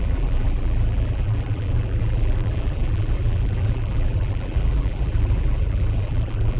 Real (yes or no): no